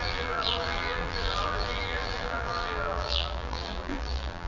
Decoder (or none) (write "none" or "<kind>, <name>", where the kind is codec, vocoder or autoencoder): vocoder, BigVGAN v2